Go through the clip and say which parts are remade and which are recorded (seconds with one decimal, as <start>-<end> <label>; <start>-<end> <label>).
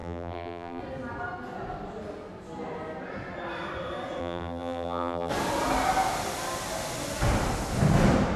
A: 0.0-0.8 remade; 0.8-4.2 recorded; 4.2-5.3 remade; 5.3-8.4 recorded